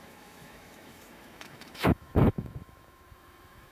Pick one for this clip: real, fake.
fake